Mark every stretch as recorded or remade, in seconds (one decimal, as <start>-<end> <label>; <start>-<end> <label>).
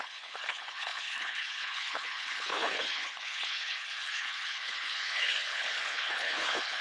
0.0-6.8 remade